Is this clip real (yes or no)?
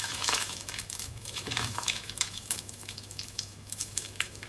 no